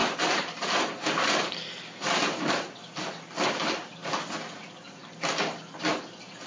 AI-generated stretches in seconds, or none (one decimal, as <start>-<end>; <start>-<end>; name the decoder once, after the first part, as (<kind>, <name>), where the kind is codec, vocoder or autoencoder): none